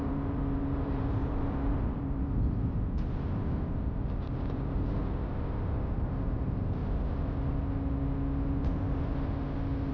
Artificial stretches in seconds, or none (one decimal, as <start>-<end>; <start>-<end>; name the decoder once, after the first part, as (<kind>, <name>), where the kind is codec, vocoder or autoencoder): 0.0-5.0 (vocoder, BigVGAN v2); 5.5-6.8